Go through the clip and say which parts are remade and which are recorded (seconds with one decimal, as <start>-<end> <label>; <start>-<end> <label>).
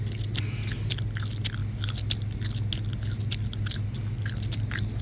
0.0-5.0 recorded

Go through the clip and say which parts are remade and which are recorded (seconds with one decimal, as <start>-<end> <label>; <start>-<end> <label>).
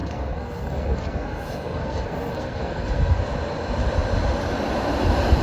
0.0-3.2 remade; 3.2-5.4 recorded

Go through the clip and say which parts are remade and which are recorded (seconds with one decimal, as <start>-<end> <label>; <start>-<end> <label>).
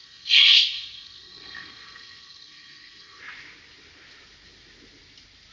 0.0-3.2 remade; 3.2-5.5 recorded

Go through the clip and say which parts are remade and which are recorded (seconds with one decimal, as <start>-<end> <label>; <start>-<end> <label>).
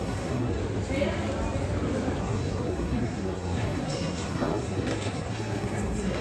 0.0-0.6 remade; 0.6-2.2 recorded; 2.2-6.2 remade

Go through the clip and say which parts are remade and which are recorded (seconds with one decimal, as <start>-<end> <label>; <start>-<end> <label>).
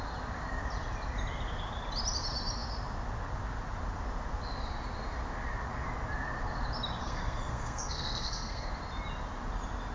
0.0-7.0 recorded; 7.0-8.7 remade; 8.7-9.9 recorded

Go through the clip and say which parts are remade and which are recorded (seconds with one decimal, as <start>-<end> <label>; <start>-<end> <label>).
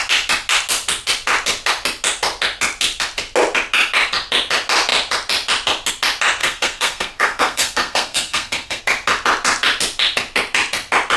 0.0-6.4 recorded; 6.4-8.8 remade; 8.8-11.2 recorded